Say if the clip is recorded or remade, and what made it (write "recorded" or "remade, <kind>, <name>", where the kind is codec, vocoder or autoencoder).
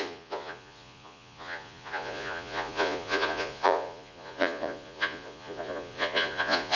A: remade, vocoder, Vocos